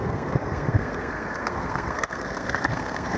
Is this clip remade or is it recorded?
remade